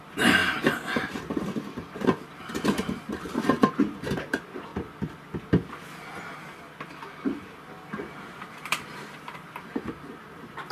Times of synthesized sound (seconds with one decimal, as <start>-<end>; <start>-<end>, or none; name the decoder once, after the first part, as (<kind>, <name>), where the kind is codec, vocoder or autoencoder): 0.0-0.4 (vocoder, BigVGAN v2); 2.0-4.7; 8.5-10.7